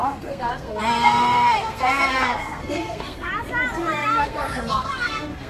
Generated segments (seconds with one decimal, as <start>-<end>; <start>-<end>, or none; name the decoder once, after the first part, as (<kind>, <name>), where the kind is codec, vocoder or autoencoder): 0.0-3.3 (codec, SNAC); 3.8-5.5